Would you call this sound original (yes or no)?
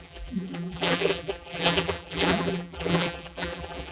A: no